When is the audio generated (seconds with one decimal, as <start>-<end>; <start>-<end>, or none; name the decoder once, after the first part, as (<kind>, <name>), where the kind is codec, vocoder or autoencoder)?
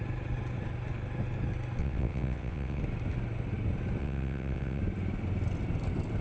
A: 1.8-2.8 (vocoder, WaveNeXt); 4.0-4.8